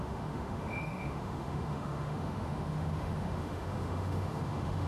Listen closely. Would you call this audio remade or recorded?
remade